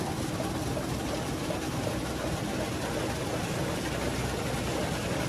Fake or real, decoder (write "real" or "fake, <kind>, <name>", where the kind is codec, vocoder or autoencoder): real